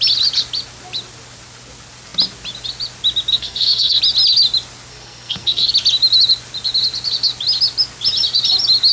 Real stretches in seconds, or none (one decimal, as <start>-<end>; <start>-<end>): 0.0-3.3; 4.0-4.9; 5.7-8.9